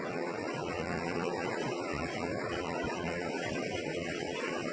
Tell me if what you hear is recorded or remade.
remade